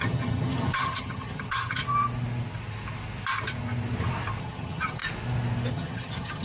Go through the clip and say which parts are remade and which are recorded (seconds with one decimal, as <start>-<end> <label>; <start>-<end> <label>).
0.0-1.8 remade; 1.8-4.4 recorded; 4.4-5.0 remade; 5.0-5.7 recorded; 5.7-6.4 remade